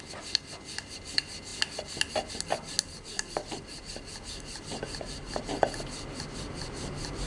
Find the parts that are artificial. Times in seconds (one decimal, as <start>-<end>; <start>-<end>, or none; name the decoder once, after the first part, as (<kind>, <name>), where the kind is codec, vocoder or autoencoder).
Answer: none